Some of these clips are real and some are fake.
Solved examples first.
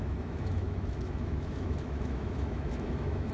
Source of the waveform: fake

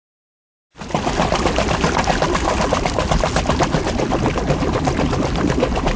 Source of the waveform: real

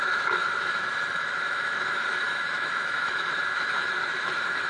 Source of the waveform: fake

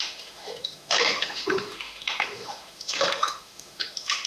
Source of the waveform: fake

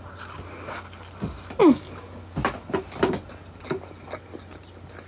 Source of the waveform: real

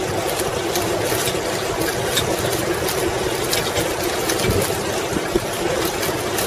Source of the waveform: real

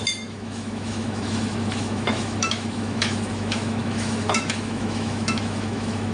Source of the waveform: fake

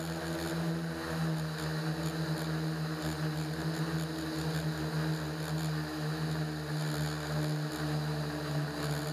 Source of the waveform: real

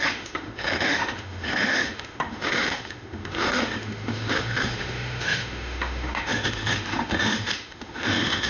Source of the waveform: fake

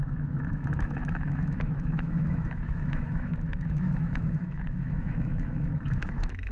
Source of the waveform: fake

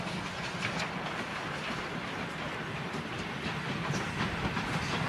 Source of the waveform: real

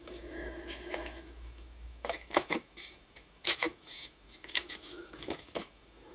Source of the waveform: fake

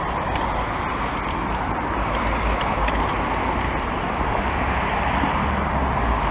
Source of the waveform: real